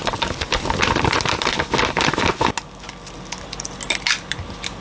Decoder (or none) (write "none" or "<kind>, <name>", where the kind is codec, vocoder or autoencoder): none